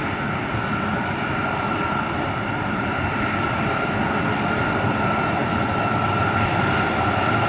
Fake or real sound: fake